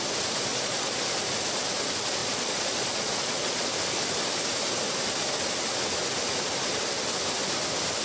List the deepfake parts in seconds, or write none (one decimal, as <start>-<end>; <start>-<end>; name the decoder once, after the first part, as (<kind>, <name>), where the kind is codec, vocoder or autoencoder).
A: 0.5-1.0 (vocoder, Vocos); 2.2-3.7